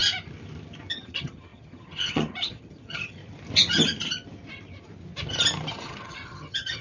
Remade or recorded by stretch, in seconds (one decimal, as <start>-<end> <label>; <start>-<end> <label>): 0.0-0.9 recorded; 0.9-3.2 remade; 3.2-5.7 recorded; 5.7-6.8 remade